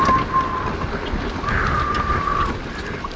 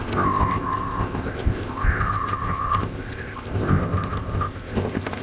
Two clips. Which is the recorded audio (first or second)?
first